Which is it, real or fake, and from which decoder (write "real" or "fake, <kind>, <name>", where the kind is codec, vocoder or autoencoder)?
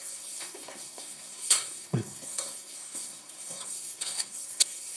fake, codec, SNAC